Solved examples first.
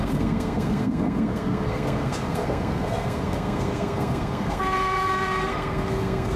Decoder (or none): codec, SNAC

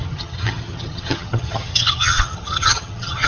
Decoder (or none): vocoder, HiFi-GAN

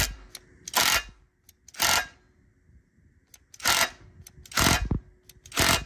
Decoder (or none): none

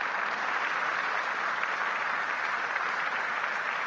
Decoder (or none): none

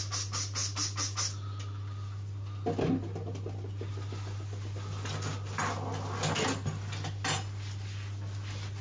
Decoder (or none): none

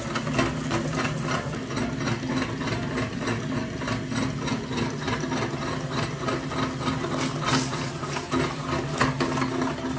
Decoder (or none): none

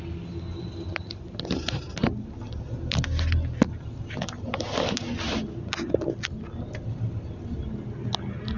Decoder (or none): none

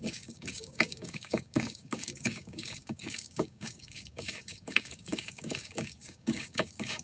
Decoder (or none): codec, DAC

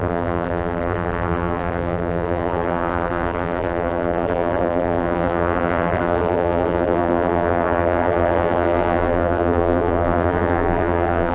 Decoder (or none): vocoder, BigVGAN v2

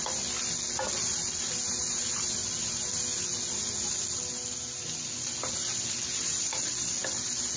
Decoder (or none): none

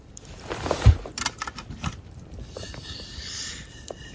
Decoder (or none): vocoder, BigVGAN v2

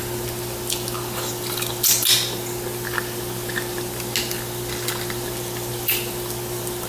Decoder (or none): none